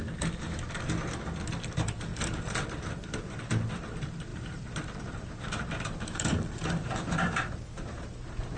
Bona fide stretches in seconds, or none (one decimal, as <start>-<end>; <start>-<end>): 0.0-2.1; 3.4-4.3; 8.0-8.6